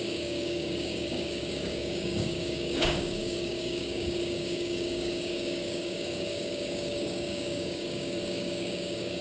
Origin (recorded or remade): remade